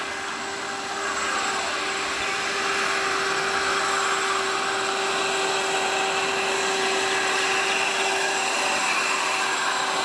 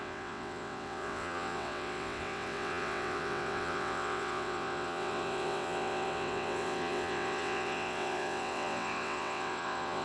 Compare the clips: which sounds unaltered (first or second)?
first